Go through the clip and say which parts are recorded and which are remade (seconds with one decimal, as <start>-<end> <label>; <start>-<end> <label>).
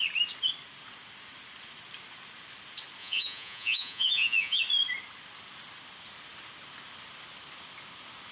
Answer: 0.0-3.0 recorded; 3.0-4.6 remade; 4.6-8.3 recorded